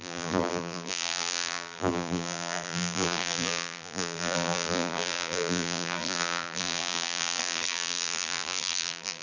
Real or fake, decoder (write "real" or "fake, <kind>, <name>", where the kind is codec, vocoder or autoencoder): fake, vocoder, BigVGAN v2